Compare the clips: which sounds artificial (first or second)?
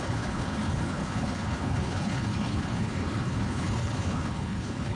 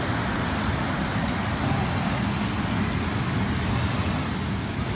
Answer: first